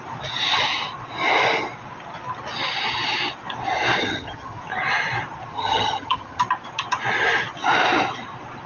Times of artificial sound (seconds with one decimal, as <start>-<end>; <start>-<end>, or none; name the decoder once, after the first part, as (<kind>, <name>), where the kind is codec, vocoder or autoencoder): 4.0-4.6 (vocoder, HiFi-GAN); 5.5-6.4